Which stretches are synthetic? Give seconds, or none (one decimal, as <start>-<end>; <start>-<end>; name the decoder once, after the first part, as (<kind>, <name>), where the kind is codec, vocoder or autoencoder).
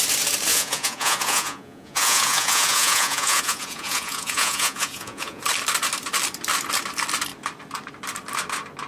0.5-5.4 (vocoder, Vocos)